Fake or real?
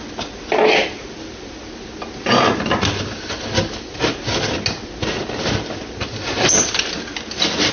real